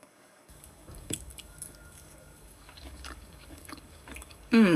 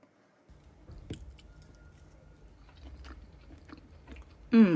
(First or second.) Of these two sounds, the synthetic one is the first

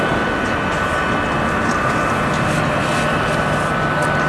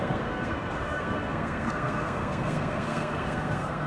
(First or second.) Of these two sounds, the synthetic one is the second